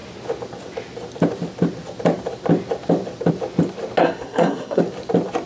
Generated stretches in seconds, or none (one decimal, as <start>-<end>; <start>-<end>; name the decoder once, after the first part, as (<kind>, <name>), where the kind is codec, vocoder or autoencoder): 4.0-4.8 (codec, SNAC)